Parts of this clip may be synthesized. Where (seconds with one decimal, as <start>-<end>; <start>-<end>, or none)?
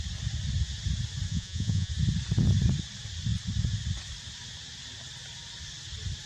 1.3-1.9